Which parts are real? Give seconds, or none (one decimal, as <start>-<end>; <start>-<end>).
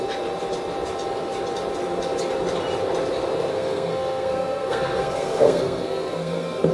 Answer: 0.0-3.5